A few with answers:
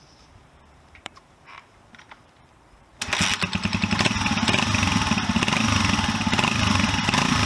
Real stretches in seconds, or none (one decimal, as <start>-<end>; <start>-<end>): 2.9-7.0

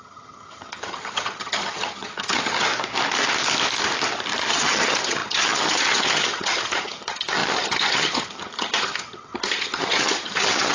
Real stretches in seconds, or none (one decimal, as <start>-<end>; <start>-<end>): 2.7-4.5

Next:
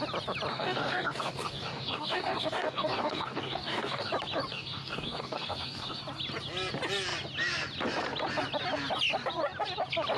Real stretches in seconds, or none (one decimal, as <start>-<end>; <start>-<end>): 0.0-0.5; 4.1-4.5; 6.0-10.2